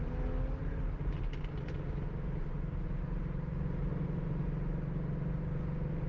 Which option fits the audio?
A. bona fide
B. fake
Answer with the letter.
A